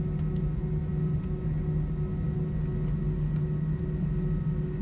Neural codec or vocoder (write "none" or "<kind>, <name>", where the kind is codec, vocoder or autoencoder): none